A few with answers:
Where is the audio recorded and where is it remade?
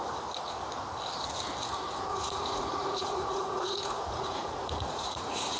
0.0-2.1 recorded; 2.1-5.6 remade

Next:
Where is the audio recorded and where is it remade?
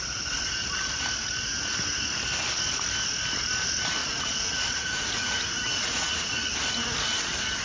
0.0-4.0 recorded; 4.0-6.5 remade; 6.5-7.6 recorded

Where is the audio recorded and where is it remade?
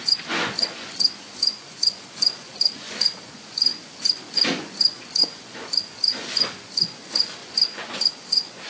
0.0-8.7 remade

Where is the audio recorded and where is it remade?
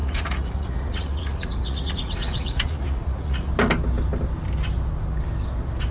0.0-3.5 remade; 3.5-5.9 recorded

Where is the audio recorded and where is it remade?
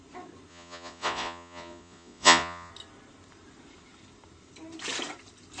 0.0-0.5 recorded; 0.5-2.7 remade; 2.7-5.6 recorded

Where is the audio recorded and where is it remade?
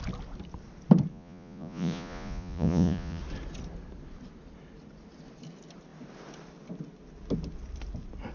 0.0-1.1 recorded; 1.1-3.2 remade; 3.2-8.3 recorded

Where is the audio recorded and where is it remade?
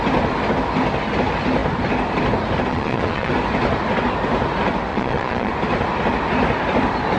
0.0-2.7 recorded; 2.7-3.3 remade; 3.3-4.9 recorded; 4.9-5.5 remade; 5.5-7.2 recorded